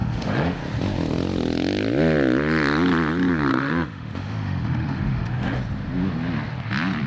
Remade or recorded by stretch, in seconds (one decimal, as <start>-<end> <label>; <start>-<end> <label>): 0.0-0.6 remade; 0.6-3.5 recorded; 3.5-5.6 remade; 5.6-7.1 recorded